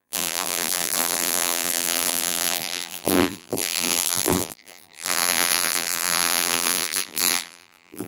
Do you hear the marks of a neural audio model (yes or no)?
yes